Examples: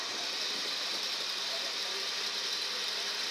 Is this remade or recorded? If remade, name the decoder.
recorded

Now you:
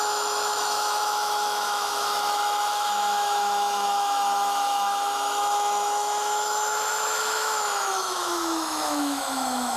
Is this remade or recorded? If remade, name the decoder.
remade, autoencoder, DAC-VAE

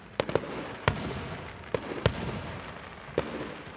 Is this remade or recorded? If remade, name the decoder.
recorded